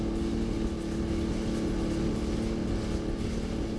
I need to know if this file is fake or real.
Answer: real